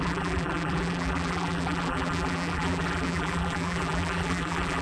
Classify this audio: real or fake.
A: fake